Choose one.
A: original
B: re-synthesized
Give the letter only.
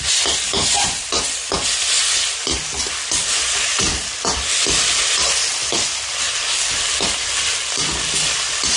A